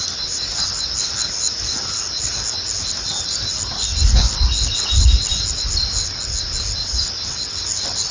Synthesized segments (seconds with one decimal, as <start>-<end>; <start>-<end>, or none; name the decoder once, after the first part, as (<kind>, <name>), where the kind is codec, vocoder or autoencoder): none